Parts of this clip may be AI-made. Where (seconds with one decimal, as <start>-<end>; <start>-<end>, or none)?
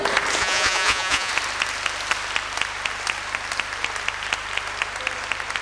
0.4-1.3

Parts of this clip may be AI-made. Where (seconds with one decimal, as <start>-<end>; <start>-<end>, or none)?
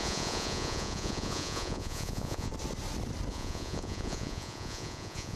0.0-2.5; 3.3-5.4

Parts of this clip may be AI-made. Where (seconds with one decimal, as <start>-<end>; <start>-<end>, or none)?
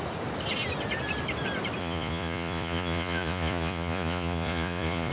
1.8-5.1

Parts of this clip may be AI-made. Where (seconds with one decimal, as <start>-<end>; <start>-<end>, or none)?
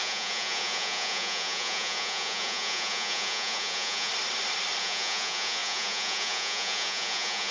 0.0-4.1; 4.8-7.5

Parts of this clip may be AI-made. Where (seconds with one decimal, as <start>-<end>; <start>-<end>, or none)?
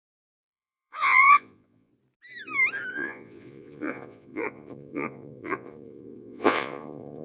0.0-1.9; 2.9-7.2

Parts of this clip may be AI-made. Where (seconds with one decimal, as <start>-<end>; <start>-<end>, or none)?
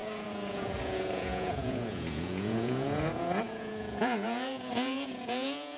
0.0-5.8